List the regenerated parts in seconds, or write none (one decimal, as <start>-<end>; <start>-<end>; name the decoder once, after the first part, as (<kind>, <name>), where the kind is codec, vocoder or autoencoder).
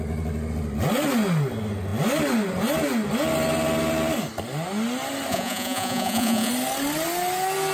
5.3-6.5 (vocoder, Vocos)